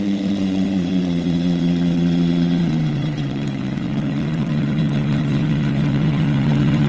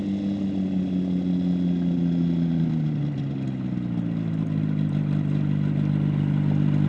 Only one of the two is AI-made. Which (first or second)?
first